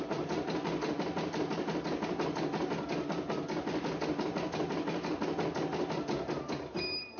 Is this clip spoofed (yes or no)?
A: no